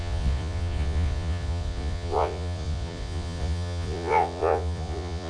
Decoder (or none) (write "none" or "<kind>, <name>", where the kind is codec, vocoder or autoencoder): vocoder, Vocos